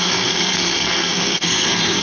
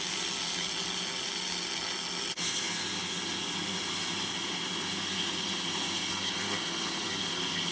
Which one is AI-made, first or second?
first